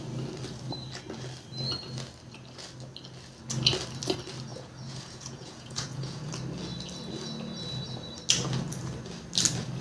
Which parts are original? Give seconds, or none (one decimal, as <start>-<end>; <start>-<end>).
0.0-4.5; 6.3-9.8